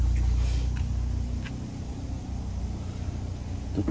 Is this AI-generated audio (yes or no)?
no